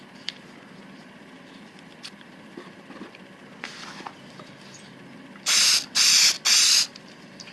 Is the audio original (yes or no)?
yes